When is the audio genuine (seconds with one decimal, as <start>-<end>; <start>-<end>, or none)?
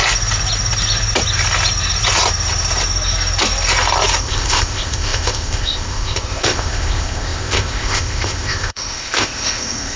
0.0-4.2